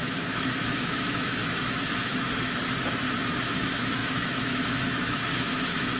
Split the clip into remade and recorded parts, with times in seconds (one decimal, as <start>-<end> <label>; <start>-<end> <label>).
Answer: 0.0-2.6 remade; 2.6-3.2 recorded; 3.2-6.0 remade

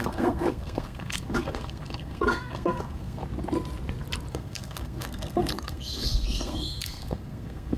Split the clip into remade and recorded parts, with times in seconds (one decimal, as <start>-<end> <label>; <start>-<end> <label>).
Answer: 0.0-3.2 remade; 3.2-4.3 recorded; 4.3-7.8 remade

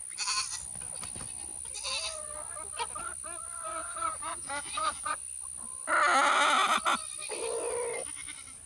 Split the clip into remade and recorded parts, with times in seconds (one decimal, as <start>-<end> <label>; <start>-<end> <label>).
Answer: 0.0-3.8 recorded; 3.8-5.2 remade; 5.2-8.7 recorded

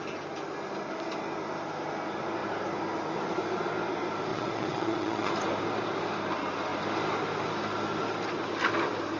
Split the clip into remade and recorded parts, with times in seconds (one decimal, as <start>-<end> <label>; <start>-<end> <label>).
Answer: 0.0-4.3 recorded; 4.3-5.3 remade; 5.3-9.2 recorded

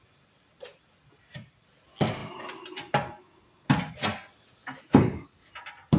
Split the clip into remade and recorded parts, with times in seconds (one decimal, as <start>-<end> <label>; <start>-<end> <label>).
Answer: 0.0-4.6 recorded; 4.6-5.5 remade; 5.5-6.0 recorded